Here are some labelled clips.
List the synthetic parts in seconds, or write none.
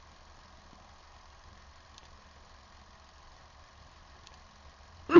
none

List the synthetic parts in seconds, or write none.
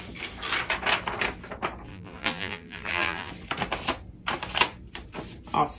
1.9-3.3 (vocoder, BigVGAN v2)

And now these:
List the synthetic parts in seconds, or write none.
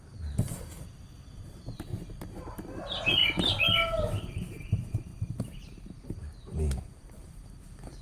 none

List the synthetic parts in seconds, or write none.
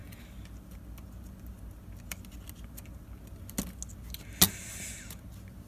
none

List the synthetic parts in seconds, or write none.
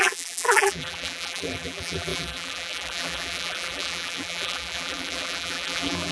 0.0-6.1 (vocoder, BigVGAN v2)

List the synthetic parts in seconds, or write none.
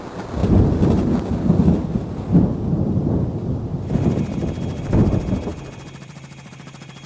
4.4-5.1 (vocoder, BigVGAN v2); 5.5-6.5